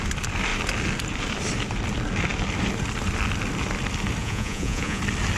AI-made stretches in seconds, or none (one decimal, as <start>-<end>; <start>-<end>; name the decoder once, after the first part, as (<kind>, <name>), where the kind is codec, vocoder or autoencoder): 4.2-5.0 (vocoder, Vocos)